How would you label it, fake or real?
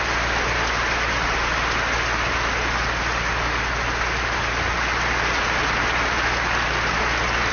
real